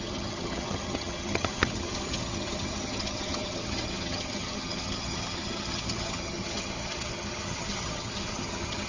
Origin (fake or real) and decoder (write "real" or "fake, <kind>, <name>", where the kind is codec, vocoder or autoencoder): fake, vocoder, HiFi-GAN